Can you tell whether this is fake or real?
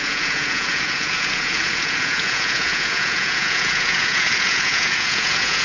fake